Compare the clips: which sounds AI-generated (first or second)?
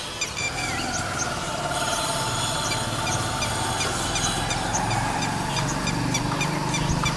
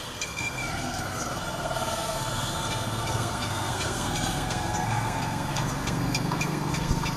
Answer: second